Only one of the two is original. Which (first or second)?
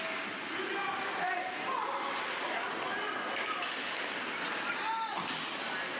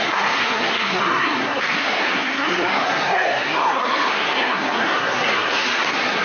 first